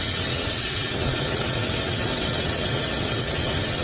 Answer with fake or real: fake